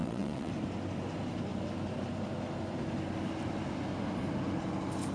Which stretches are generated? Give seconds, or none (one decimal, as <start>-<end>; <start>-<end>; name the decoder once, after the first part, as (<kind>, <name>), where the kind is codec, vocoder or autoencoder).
0.0-0.5 (vocoder, WaveNeXt)